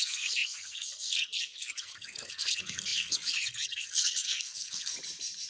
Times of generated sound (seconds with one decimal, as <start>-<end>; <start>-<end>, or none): 0.0-4.9